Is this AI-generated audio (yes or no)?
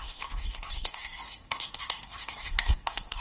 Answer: yes